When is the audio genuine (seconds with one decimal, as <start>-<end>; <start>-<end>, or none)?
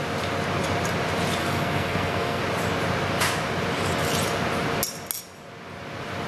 0.0-1.4; 2.4-6.3